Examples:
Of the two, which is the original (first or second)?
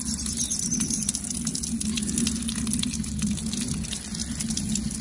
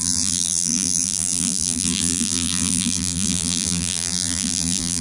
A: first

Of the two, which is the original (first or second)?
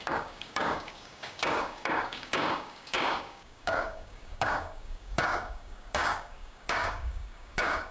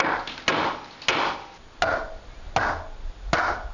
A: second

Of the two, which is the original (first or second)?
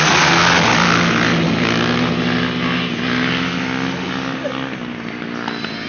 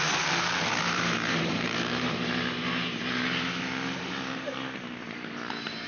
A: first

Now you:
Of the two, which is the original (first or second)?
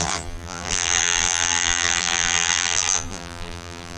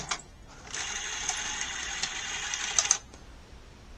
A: second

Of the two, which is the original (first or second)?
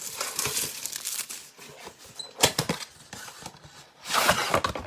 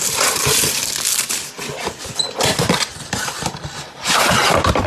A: first